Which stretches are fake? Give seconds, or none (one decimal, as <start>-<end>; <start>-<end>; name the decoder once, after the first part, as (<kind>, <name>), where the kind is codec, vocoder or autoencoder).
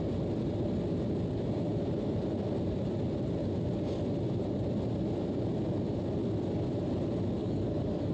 7.4-8.1 (codec, DAC)